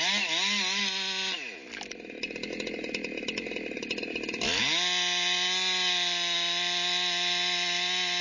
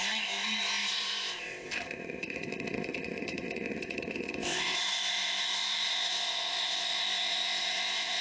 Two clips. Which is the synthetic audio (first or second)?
second